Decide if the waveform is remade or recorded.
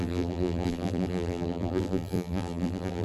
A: remade